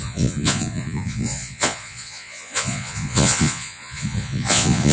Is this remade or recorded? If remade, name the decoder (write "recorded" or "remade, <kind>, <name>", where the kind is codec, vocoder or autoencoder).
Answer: remade, vocoder, Vocos